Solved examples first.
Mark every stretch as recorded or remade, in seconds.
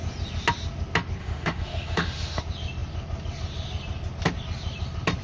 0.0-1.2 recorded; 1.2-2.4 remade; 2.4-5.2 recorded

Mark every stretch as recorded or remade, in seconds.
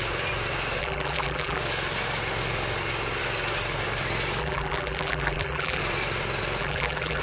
0.0-0.8 recorded; 0.8-1.6 remade; 1.6-4.4 recorded; 4.4-5.8 remade; 5.8-6.6 recorded; 6.6-7.2 remade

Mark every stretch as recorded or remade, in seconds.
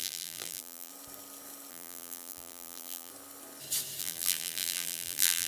0.0-0.9 remade; 0.9-1.7 recorded; 1.7-3.1 remade; 3.1-4.0 recorded; 4.0-5.5 remade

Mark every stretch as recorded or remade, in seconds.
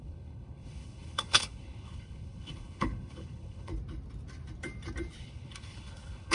0.0-3.7 remade; 3.7-5.2 recorded; 5.2-6.3 remade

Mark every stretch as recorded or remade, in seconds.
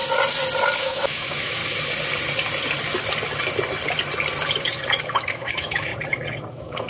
0.0-0.8 recorded; 0.8-1.6 remade; 1.6-5.0 recorded; 5.0-5.9 remade; 5.9-6.5 recorded; 6.5-6.9 remade